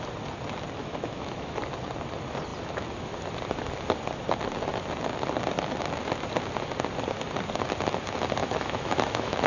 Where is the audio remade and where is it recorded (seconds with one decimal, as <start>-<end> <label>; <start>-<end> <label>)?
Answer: 0.0-0.8 recorded; 0.8-1.6 remade; 1.6-8.4 recorded; 8.4-9.5 remade